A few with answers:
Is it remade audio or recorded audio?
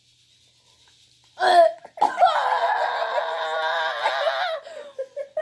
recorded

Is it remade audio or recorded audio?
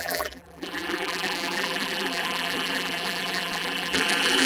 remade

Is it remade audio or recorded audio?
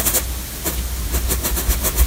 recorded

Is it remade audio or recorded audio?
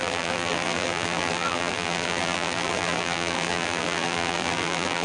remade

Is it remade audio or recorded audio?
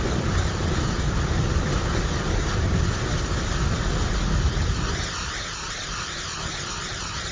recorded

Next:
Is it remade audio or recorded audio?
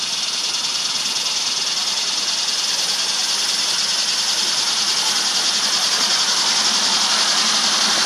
recorded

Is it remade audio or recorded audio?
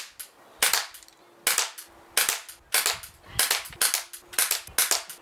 recorded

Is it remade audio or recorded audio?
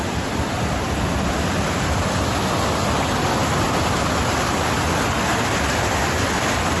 recorded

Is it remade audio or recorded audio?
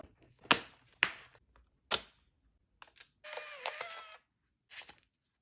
recorded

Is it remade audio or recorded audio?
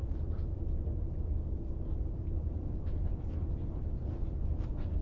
recorded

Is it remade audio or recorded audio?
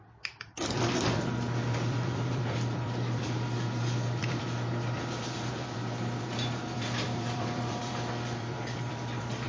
remade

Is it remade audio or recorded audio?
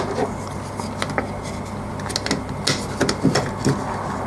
recorded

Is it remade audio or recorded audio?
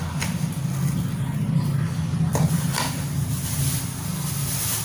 recorded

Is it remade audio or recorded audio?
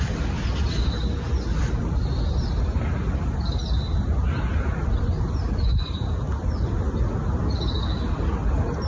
recorded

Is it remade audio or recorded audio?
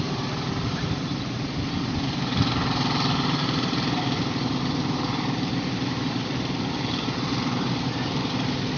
remade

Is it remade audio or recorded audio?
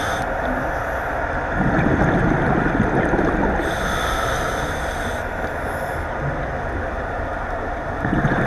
recorded